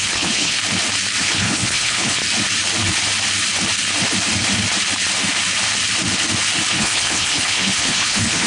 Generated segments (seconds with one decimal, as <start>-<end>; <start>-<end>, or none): 0.0-0.6; 1.2-2.2; 6.7-8.5